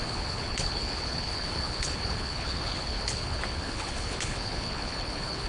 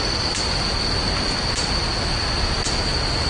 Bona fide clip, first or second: second